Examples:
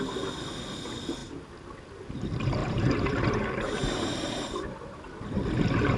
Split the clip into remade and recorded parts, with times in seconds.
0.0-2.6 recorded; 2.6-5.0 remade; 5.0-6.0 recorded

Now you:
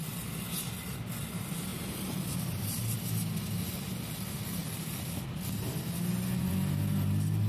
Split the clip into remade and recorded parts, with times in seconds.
0.0-1.7 recorded; 1.7-2.7 remade; 2.7-4.6 recorded; 4.6-5.2 remade; 5.2-7.5 recorded

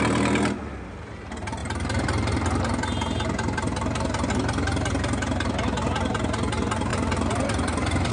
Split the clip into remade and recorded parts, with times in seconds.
0.0-6.9 recorded; 6.9-8.1 remade

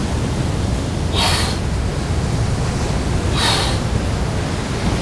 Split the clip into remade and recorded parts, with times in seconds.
0.0-5.0 recorded

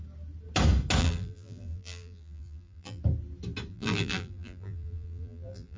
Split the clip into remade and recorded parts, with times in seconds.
0.0-1.0 recorded; 1.0-3.0 remade; 3.0-3.7 recorded; 3.7-5.8 remade

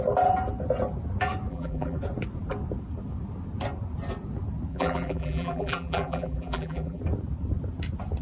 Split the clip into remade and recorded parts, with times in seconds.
0.0-1.5 recorded; 1.5-2.0 remade; 2.0-4.7 recorded; 4.7-7.0 remade; 7.0-8.2 recorded

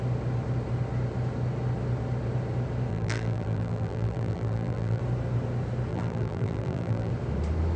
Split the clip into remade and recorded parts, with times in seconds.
0.0-2.9 recorded; 2.9-5.0 remade; 5.0-5.9 recorded; 5.9-7.1 remade; 7.1-7.8 recorded